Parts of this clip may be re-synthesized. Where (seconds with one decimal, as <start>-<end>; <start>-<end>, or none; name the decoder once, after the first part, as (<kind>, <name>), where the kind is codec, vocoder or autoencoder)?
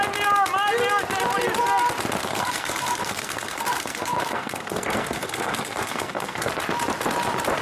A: 2.2-6.5 (codec, SNAC)